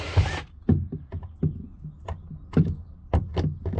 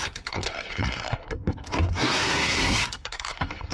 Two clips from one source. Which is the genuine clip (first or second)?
first